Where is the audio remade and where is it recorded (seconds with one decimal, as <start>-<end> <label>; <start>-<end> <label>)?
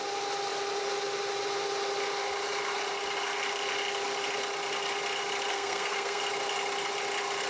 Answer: 0.0-5.5 recorded; 5.5-6.2 remade; 6.2-7.5 recorded